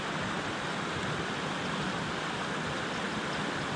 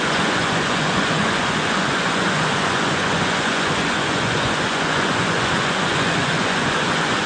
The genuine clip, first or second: first